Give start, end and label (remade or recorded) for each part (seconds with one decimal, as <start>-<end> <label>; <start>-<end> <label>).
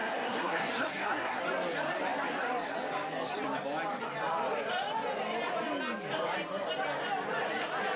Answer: 0.0-1.4 remade; 1.4-8.0 recorded